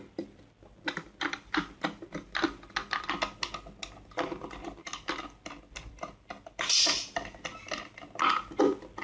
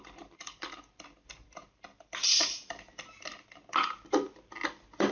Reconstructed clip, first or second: second